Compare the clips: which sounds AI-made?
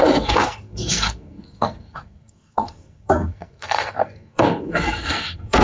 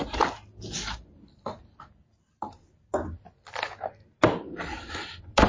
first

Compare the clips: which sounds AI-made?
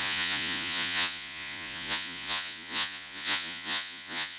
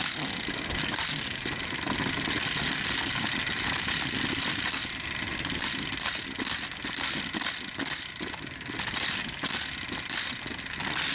first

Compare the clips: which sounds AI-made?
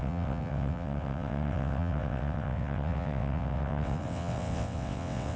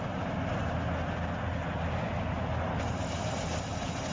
first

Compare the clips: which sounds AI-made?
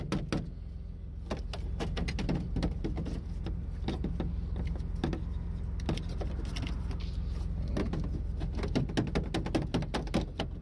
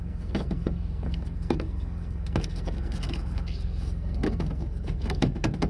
second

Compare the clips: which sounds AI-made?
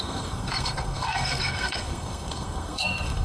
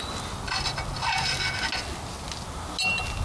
first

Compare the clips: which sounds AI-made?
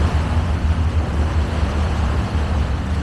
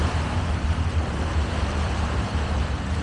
second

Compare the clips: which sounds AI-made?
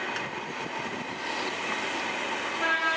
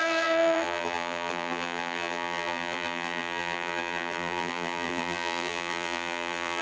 second